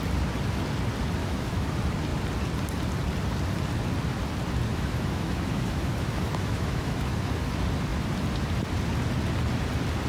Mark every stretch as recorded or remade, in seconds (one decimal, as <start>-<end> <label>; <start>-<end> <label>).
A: 0.0-1.2 recorded; 1.2-1.7 remade; 1.7-4.7 recorded; 4.7-7.5 remade; 7.5-10.1 recorded